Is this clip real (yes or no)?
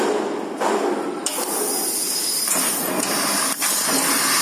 yes